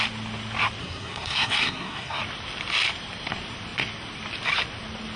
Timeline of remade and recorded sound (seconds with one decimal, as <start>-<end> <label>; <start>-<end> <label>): 0.0-0.8 recorded; 0.8-2.2 remade; 2.2-5.2 recorded